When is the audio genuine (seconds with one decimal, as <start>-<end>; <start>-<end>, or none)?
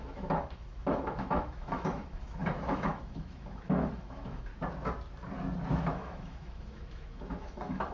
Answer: 4.5-5.9